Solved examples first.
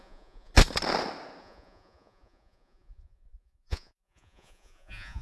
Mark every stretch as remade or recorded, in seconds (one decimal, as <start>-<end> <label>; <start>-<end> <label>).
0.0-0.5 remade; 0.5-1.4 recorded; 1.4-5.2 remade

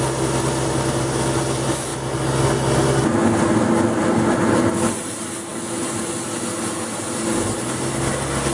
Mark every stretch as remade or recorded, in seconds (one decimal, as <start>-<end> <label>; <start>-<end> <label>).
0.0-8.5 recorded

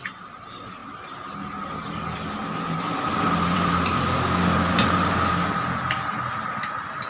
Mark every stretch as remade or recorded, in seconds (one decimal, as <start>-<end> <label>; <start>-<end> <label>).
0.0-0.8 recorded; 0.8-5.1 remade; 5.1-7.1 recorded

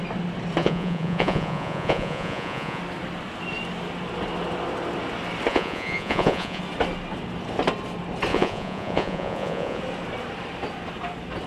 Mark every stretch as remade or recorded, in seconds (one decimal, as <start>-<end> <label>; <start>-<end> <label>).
0.0-0.6 recorded; 0.6-2.8 remade; 2.8-5.5 recorded; 5.5-6.6 remade; 6.6-8.3 recorded; 8.3-9.8 remade; 9.8-11.5 recorded

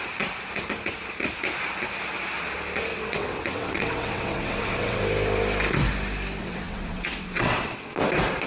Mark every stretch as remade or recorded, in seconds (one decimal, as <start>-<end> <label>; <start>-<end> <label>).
0.0-2.9 recorded; 2.9-5.0 remade; 5.0-6.4 recorded; 6.4-7.9 remade; 7.9-8.5 recorded

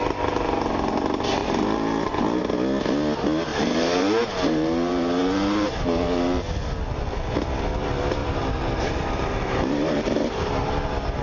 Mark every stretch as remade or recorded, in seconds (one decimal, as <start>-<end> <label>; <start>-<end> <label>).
0.0-1.4 recorded; 1.4-2.4 remade; 2.4-3.5 recorded; 3.5-6.4 remade; 6.4-8.2 recorded; 8.2-11.2 remade

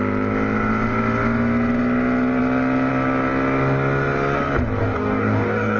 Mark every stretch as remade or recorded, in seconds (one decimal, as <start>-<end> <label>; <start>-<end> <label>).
0.0-4.8 recorded; 4.8-5.8 remade